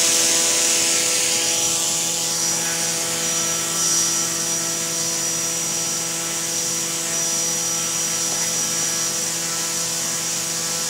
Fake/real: real